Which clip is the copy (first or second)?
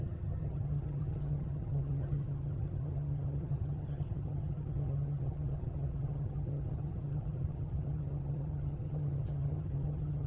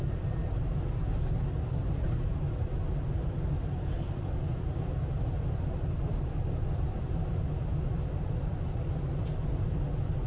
first